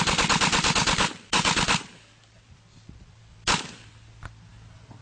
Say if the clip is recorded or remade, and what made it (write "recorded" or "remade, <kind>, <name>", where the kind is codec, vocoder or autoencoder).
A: recorded